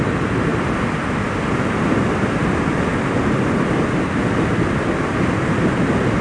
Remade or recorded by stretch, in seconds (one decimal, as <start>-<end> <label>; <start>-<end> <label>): 0.0-6.2 recorded